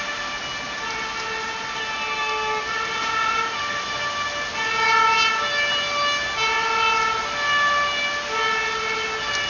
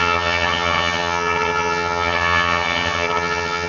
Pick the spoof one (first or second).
second